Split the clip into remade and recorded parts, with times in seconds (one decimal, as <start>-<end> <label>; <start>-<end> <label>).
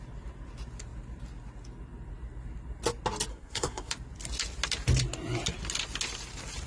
0.0-3.3 recorded; 3.3-3.9 remade; 3.9-6.7 recorded